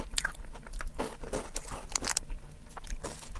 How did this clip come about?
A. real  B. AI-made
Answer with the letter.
A